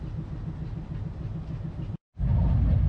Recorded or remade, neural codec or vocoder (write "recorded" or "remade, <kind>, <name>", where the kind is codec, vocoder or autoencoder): recorded